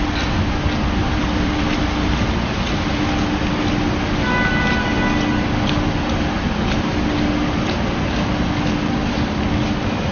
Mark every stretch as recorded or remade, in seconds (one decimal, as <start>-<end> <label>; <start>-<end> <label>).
0.0-1.0 recorded; 1.0-1.5 remade; 1.5-10.1 recorded